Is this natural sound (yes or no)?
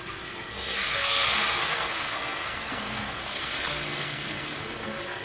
no